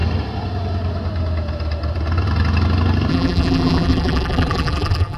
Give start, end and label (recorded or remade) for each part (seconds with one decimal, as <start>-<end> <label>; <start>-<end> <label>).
0.0-3.1 recorded; 3.1-5.2 remade